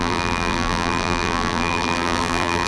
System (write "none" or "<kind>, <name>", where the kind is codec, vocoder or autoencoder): vocoder, BigVGAN v2